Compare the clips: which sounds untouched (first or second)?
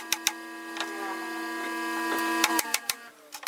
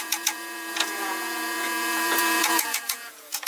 first